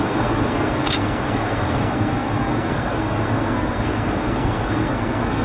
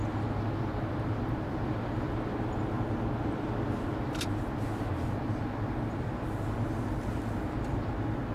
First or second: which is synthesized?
first